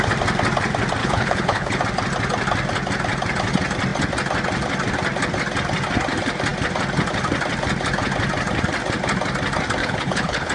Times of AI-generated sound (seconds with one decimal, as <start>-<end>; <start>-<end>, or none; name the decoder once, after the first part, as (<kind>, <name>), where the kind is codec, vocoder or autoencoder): 1.0-1.8 (codec, HILCodec); 9.8-10.5